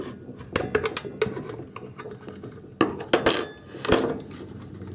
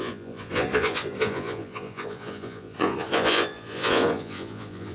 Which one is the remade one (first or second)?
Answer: second